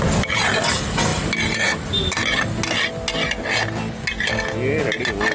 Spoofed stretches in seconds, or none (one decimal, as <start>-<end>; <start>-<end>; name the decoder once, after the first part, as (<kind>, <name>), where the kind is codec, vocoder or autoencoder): none